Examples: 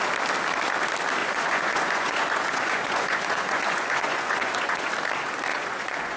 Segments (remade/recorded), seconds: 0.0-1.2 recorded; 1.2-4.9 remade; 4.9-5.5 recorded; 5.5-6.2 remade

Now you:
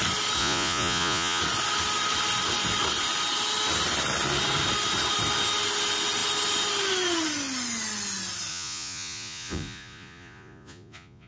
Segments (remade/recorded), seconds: 0.0-0.4 recorded; 0.4-1.4 remade; 1.4-8.5 recorded; 8.5-11.3 remade

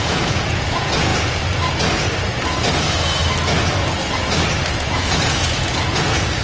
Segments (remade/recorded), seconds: 0.0-1.1 remade; 1.1-4.9 recorded; 4.9-6.4 remade

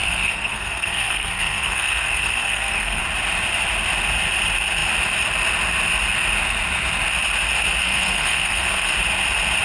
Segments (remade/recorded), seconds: 0.0-3.0 remade; 3.0-7.8 recorded; 7.8-8.9 remade; 8.9-9.6 recorded